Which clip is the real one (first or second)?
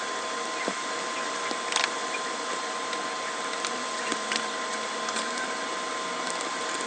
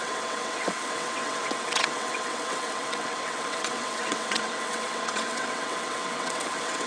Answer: first